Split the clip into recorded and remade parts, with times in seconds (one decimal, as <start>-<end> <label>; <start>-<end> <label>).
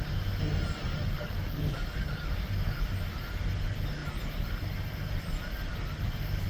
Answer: 0.0-0.9 recorded; 0.9-2.3 remade; 2.3-6.5 recorded